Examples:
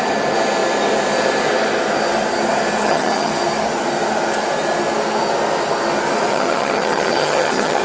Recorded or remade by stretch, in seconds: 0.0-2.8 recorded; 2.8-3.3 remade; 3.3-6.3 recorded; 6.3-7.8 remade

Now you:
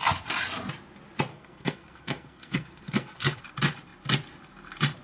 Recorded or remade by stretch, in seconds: 0.0-1.3 recorded; 1.3-3.4 remade; 3.4-5.0 recorded

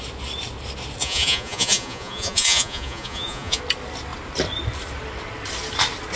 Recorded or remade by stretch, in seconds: 0.0-1.0 recorded; 1.0-3.6 remade; 3.6-6.2 recorded

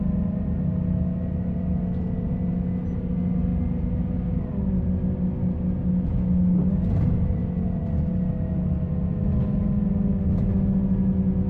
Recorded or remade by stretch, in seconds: 0.0-11.5 recorded

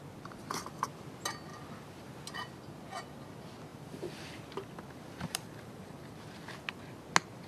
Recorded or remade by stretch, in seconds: 0.0-1.5 recorded; 1.5-2.1 remade; 2.1-3.7 recorded; 3.7-6.2 remade; 6.2-7.5 recorded

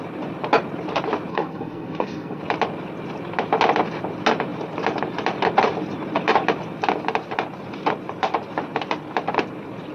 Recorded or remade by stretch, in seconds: 0.0-1.3 recorded; 1.3-2.4 remade; 2.4-9.9 recorded

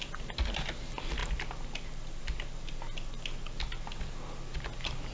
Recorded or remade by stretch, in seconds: 0.0-5.1 recorded

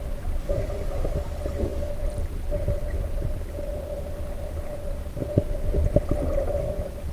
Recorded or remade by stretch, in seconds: 0.0-7.1 recorded